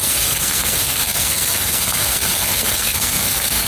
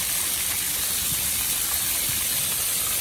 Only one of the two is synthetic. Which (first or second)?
first